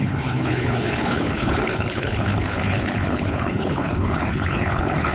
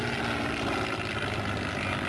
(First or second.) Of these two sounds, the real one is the second